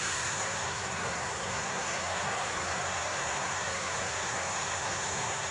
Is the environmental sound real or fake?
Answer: fake